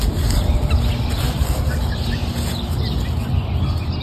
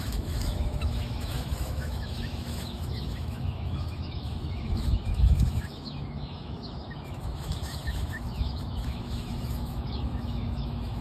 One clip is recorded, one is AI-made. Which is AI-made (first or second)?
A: second